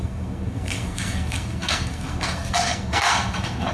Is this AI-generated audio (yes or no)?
yes